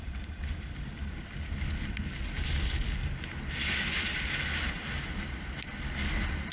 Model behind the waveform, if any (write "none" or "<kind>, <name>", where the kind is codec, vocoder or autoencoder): none